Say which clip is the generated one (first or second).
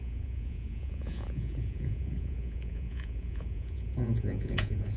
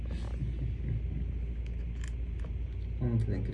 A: first